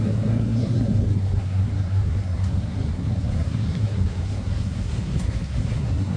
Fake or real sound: fake